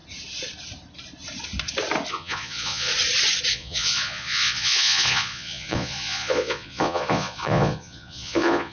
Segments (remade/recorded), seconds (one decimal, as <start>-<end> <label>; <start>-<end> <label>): 0.0-2.1 recorded; 2.1-2.9 remade; 2.9-3.5 recorded; 3.5-8.7 remade